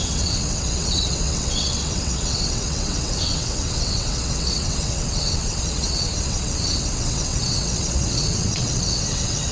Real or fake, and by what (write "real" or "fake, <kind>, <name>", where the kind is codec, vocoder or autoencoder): fake, vocoder, WaveNeXt